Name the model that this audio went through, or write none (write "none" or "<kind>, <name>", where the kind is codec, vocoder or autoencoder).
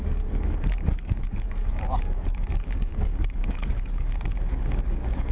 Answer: codec, DAC